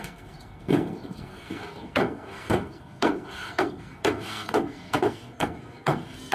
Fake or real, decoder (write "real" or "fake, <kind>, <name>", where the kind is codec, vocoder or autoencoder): fake, codec, SNAC